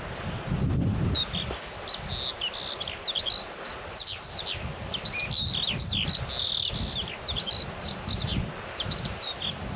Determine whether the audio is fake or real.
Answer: real